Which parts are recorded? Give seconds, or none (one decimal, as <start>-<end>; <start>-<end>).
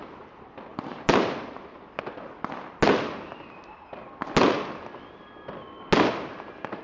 0.0-0.7; 1.5-6.8